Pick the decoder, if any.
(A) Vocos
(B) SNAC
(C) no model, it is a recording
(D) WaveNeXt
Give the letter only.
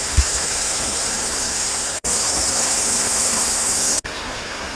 B